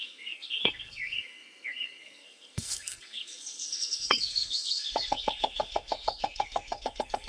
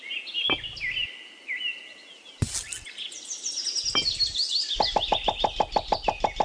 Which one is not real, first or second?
first